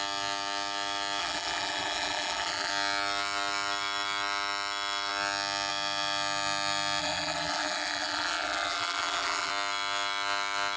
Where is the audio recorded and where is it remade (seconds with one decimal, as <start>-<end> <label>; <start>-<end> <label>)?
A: 0.0-1.2 recorded; 1.2-2.7 remade; 2.7-7.0 recorded; 7.0-9.5 remade; 9.5-10.8 recorded